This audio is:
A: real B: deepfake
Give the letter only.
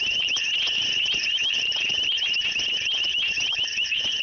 B